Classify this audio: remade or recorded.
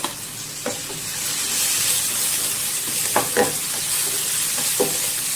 recorded